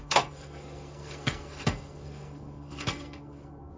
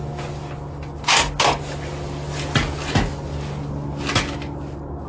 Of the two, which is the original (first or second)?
second